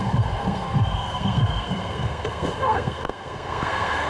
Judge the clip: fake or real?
fake